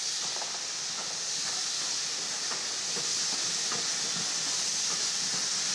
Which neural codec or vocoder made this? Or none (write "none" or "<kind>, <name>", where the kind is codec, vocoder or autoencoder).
none